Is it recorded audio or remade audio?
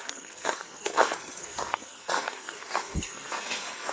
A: remade